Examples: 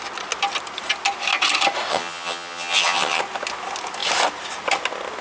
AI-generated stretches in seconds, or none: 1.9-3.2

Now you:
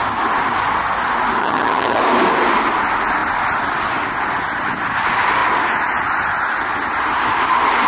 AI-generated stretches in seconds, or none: 1.4-2.0

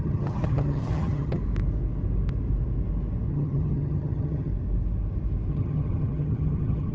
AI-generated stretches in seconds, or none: 0.0-1.4; 3.3-4.5; 5.5-6.9

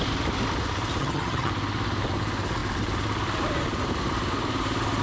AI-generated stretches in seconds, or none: 1.0-1.5

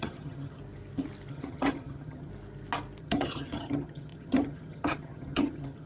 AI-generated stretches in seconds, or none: 0.0-0.6; 1.3-2.3; 3.0-5.9

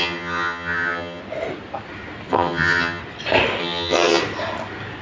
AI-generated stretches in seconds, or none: 0.0-1.2; 2.3-3.0; 3.6-4.2